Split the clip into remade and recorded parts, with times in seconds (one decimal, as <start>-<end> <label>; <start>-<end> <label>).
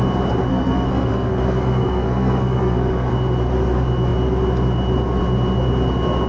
0.0-0.5 recorded; 0.5-3.1 remade; 3.1-6.3 recorded